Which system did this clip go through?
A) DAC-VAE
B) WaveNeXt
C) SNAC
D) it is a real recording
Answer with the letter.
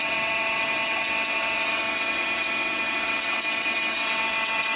B